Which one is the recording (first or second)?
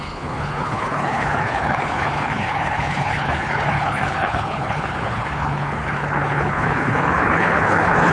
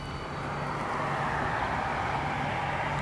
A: second